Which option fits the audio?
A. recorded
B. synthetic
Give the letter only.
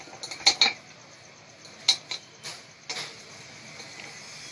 A